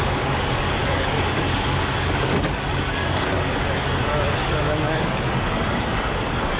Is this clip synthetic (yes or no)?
yes